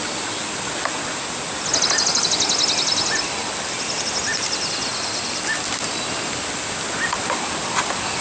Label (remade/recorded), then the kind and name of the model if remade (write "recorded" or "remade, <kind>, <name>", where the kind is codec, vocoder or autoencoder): recorded